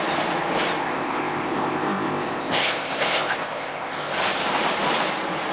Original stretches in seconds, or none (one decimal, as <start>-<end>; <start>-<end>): 0.0-0.8; 4.1-5.5